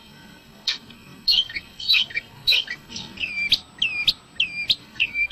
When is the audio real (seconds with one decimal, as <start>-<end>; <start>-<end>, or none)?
3.3-4.8